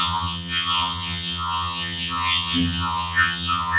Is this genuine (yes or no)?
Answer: no